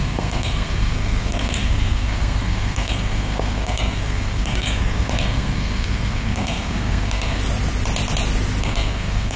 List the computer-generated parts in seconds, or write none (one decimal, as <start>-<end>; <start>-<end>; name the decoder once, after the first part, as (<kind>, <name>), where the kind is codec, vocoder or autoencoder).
0.0-7.4 (codec, SNAC); 8.6-9.4